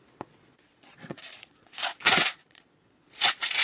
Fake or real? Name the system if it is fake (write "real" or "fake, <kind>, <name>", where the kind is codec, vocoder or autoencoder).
fake, vocoder, Vocos